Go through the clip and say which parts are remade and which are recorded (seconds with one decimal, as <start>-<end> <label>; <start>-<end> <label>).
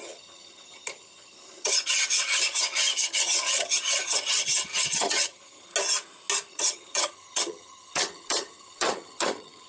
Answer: 0.0-5.7 remade; 5.7-6.5 recorded; 6.5-9.7 remade